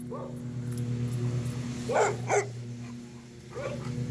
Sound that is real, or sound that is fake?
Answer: real